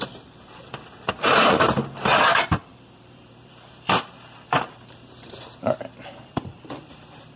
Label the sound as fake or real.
fake